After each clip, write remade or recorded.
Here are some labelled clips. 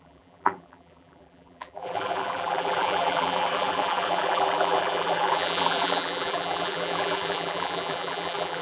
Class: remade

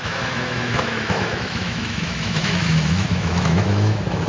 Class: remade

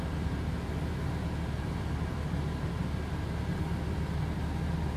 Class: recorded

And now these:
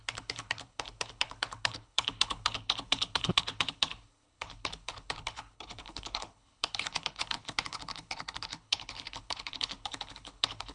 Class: remade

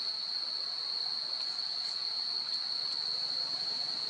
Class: recorded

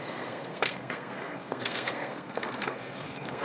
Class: remade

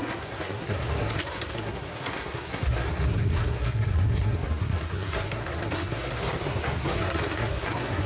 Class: remade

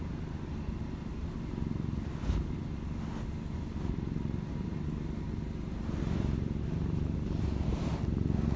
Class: recorded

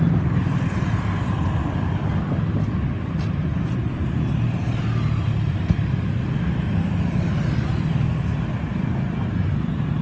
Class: recorded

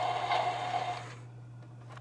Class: recorded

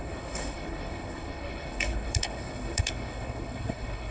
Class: remade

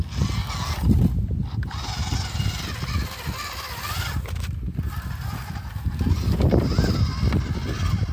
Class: recorded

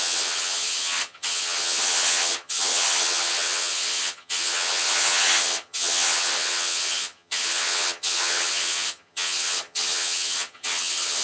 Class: remade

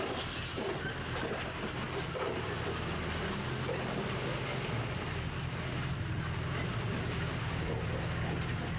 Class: recorded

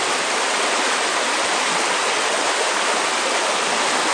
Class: recorded